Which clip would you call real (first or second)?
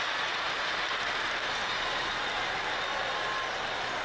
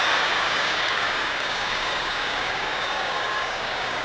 first